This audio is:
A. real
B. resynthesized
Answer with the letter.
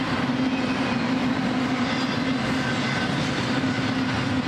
A